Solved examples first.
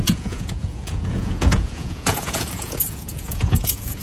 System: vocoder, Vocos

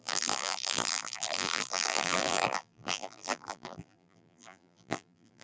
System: vocoder, BigVGAN v2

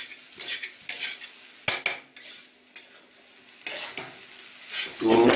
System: none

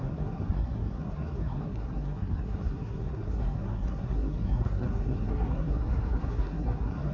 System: codec, SNAC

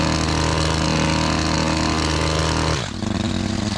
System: none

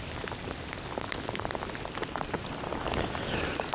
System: none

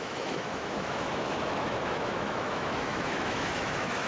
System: autoencoder, DAC-VAE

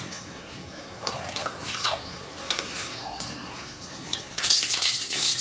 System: codec, SNAC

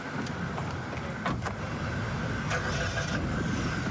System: none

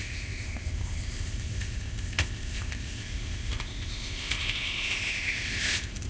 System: codec, ZipCodec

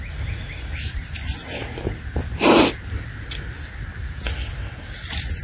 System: none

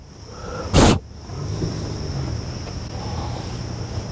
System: none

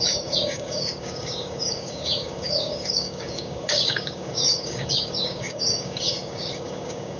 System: codec, DAC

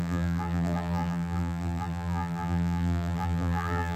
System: vocoder, BigVGAN v2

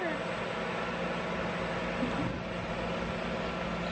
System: none